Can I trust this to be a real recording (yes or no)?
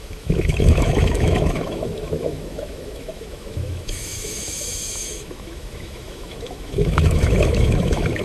no